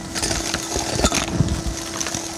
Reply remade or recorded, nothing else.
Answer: recorded